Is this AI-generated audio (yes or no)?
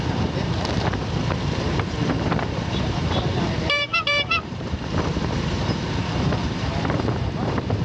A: yes